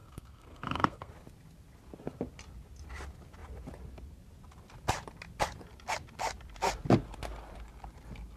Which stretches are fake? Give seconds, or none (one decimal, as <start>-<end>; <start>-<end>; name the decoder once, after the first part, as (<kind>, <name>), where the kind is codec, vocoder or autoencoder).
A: 0.0-1.1 (codec, SNAC)

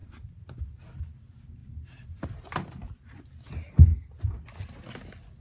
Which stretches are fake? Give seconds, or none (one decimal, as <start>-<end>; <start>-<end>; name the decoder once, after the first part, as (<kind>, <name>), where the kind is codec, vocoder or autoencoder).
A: 1.6-3.2 (vocoder, BigVGAN v2)

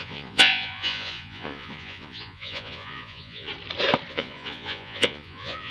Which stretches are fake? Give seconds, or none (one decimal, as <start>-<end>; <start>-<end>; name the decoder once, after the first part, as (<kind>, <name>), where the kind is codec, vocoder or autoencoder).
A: 0.0-3.5 (vocoder, Vocos); 4.1-5.7

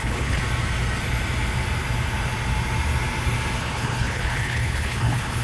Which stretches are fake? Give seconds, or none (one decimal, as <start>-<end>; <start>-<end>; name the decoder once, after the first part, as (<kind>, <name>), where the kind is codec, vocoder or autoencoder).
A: 0.0-0.4 (codec, HILCodec); 3.6-5.4

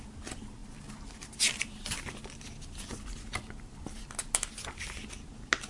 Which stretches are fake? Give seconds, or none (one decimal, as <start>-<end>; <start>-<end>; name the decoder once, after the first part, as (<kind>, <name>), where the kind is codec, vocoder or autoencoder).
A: none

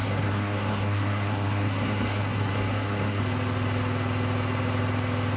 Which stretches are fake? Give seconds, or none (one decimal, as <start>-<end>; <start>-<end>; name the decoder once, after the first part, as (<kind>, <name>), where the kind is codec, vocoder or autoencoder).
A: 0.0-3.2 (codec, SNAC)

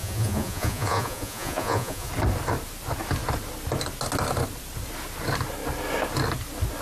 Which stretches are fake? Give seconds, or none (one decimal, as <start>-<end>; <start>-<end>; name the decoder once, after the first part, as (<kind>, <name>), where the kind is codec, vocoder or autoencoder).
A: 0.0-2.1 (vocoder, Vocos)